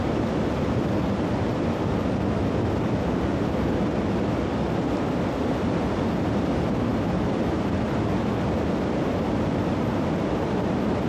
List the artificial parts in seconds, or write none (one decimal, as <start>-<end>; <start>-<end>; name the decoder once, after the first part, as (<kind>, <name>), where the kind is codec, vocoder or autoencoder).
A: 3.3-3.8 (vocoder, BigVGAN v2); 6.9-7.8